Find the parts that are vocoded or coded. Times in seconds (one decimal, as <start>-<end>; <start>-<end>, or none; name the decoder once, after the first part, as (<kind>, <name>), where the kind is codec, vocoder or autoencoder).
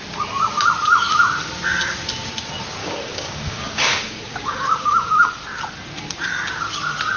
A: 2.8-5.3 (codec, DAC)